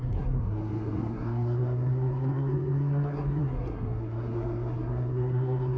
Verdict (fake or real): fake